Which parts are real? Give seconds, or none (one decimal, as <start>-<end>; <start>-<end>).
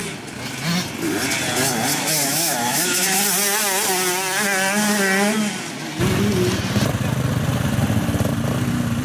0.0-1.9; 3.2-9.0